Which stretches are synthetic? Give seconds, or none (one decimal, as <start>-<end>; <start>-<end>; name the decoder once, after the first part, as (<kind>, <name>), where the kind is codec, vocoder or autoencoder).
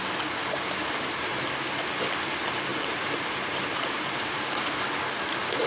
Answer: 2.7-4.7 (vocoder, BigVGAN v2)